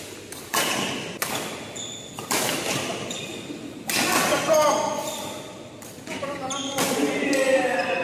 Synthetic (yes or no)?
no